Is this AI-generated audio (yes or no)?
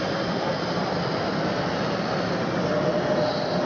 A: no